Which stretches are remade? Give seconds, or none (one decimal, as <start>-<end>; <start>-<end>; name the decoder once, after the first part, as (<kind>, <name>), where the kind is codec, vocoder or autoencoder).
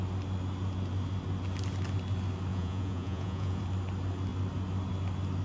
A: 2.5-3.6 (vocoder, Vocos)